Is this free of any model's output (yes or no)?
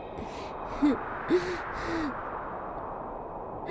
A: yes